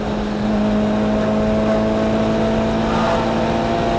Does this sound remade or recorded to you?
recorded